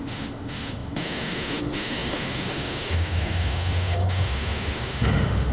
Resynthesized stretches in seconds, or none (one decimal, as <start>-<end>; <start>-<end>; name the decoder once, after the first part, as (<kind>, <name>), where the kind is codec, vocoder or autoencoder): 0.0-5.5 (autoencoder, DAC-VAE)